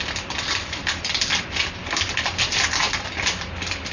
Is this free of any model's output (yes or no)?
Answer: yes